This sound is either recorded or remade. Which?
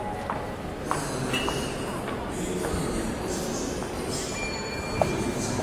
recorded